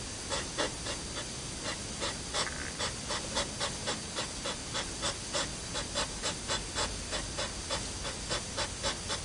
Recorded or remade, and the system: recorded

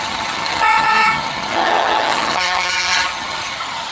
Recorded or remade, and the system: remade, vocoder, HiFi-GAN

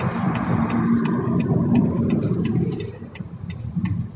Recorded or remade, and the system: remade, vocoder, BigVGAN v2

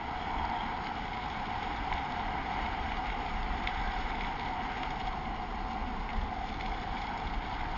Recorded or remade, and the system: recorded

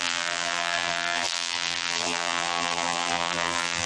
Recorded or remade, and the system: remade, vocoder, BigVGAN v2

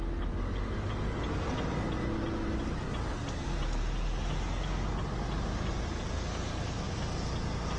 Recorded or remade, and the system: recorded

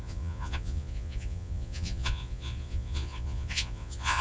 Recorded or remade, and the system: remade, vocoder, Vocos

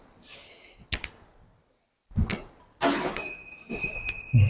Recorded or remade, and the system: recorded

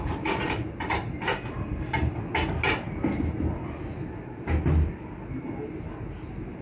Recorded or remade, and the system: recorded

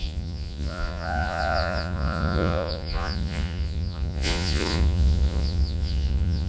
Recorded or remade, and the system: remade, vocoder, Vocos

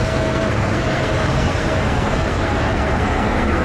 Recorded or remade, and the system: remade, codec, SNAC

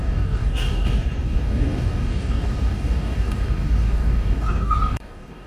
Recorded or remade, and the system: remade, codec, DAC